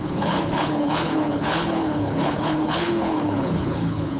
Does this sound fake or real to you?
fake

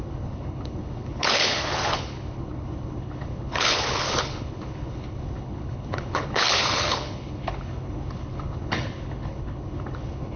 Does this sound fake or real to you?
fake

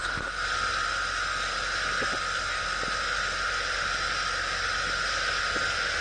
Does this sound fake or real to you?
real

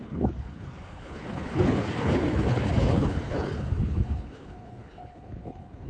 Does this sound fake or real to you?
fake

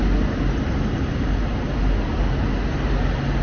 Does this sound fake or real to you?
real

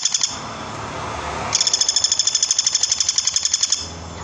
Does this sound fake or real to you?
real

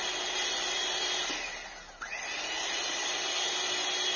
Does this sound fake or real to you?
real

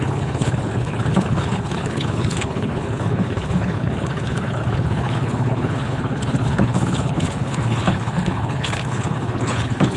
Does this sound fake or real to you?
fake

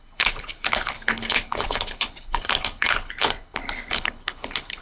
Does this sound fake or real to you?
fake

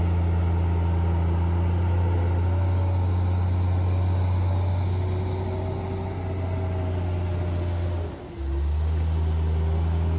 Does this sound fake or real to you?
real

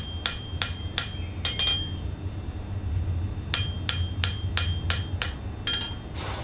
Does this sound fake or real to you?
real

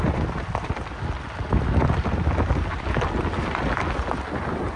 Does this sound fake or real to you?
real